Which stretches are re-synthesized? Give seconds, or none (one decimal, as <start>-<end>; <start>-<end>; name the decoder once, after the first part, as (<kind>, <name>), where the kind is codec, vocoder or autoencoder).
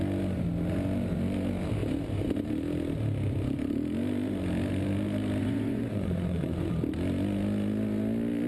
5.4-6.7 (vocoder, Vocos)